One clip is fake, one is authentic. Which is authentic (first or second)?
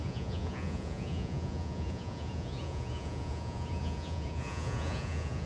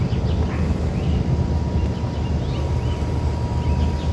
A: second